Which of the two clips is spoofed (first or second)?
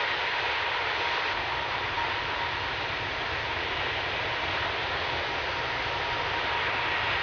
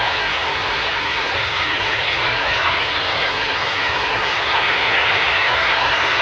second